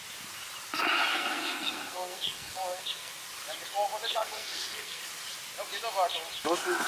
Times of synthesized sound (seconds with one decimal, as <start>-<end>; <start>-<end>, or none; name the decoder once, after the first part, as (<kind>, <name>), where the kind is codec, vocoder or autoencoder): 1.1-3.1 (codec, SNAC); 4.1-5.0